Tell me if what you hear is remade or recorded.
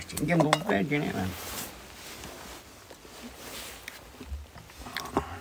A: recorded